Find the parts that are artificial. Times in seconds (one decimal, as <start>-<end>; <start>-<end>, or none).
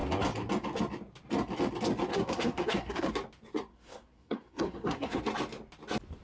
2.1-3.1; 3.7-5.2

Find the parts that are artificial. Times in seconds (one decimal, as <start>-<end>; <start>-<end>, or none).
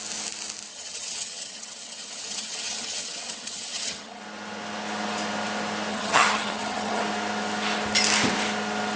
0.7-4.2; 5.9-7.0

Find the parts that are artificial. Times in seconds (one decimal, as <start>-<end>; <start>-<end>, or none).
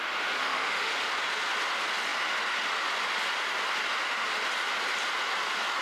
0.4-0.9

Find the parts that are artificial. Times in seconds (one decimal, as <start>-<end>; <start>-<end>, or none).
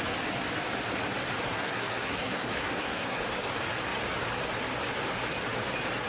1.5-3.2